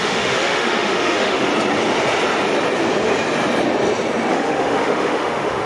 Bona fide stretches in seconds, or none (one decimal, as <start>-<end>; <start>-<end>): 1.5-4.3